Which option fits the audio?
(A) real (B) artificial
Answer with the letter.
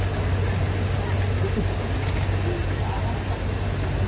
A